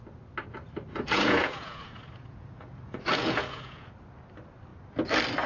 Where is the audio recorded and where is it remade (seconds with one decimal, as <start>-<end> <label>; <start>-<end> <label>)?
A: 0.0-0.9 recorded; 0.9-3.9 remade; 3.9-5.5 recorded